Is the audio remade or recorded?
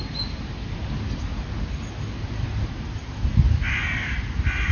recorded